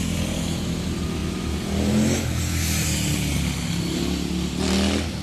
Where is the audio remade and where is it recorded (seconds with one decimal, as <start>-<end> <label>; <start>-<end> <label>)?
0.0-5.2 recorded